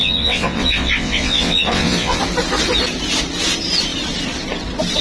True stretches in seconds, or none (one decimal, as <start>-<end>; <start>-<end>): 2.2-5.0